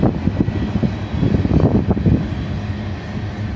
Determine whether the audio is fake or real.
real